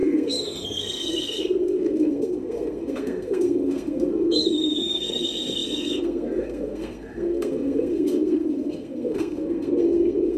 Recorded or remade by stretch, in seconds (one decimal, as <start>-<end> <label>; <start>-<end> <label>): 0.0-10.4 remade

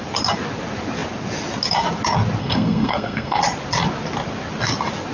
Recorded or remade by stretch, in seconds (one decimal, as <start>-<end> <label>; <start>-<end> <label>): 0.0-2.4 recorded; 2.4-3.4 remade; 3.4-5.1 recorded

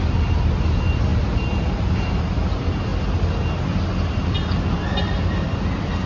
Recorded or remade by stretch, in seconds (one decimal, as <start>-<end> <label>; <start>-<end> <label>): 0.0-6.1 recorded